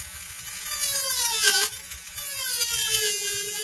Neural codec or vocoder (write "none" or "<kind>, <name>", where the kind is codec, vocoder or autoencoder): vocoder, Vocos